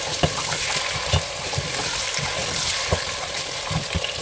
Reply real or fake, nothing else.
real